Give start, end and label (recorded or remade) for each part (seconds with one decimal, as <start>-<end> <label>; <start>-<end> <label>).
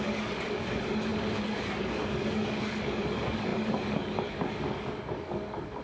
0.0-5.8 remade